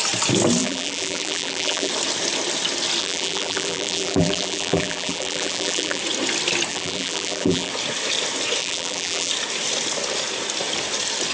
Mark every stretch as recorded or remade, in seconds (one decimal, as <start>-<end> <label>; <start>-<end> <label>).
0.0-0.6 recorded; 0.6-1.9 remade; 1.9-3.0 recorded; 3.0-6.0 remade; 6.0-6.7 recorded; 6.7-7.7 remade; 7.7-8.6 recorded; 8.6-9.3 remade; 9.3-11.3 recorded